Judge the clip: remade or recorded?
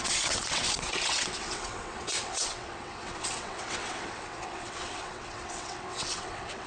remade